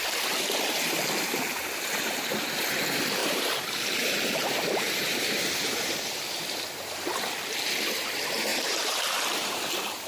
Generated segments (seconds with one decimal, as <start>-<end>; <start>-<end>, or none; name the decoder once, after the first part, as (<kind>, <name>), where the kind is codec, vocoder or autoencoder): 3.2-6.4 (vocoder, BigVGAN v2); 8.5-9.5